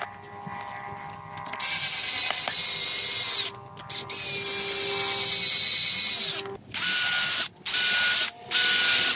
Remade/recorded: recorded